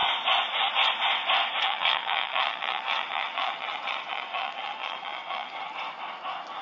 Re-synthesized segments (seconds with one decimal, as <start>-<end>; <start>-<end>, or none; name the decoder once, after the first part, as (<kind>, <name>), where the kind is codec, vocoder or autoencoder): 1.6-5.6 (vocoder, WaveNeXt)